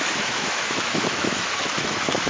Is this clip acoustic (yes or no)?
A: no